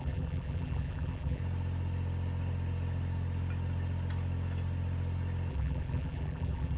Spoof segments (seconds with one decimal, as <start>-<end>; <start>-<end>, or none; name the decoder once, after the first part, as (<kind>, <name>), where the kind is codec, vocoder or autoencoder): 0.0-1.4 (vocoder, BigVGAN v2); 5.5-6.8